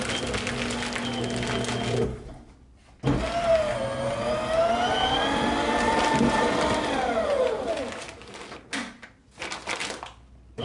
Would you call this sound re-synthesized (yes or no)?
no